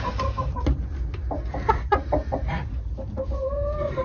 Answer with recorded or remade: recorded